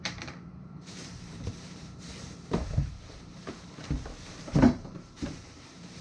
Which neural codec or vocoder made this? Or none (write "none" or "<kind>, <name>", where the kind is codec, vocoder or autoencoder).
vocoder, BigVGAN v2